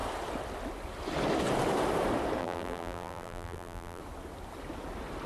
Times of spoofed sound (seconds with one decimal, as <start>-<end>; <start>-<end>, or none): 2.4-4.0